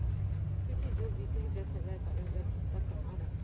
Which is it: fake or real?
real